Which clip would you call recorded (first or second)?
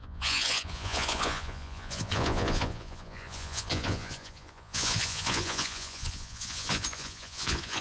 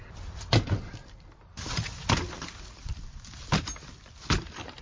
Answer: second